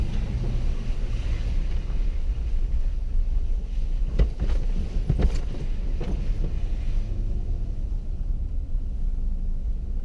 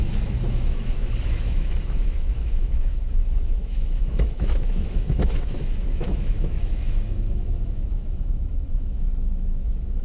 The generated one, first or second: second